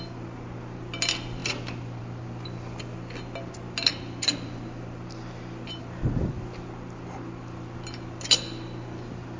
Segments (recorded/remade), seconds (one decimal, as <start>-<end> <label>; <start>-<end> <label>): 0.0-9.4 recorded